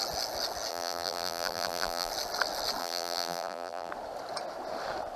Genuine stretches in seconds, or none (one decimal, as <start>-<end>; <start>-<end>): 0.0-0.7; 2.1-2.8; 3.9-5.2